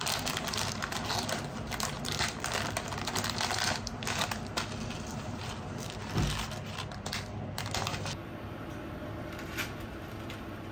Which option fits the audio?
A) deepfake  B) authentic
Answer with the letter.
B